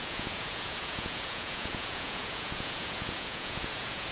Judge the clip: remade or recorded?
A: remade